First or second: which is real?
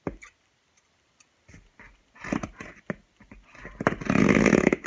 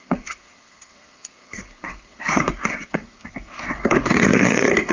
first